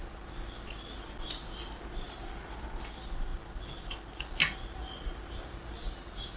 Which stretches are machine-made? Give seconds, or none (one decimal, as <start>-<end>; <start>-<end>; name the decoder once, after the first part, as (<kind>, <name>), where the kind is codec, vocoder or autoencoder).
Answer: 5.8-6.4 (vocoder, BigVGAN v2)